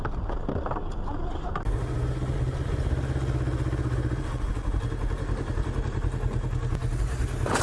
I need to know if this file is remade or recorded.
recorded